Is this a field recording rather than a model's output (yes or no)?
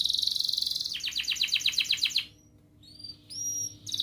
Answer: yes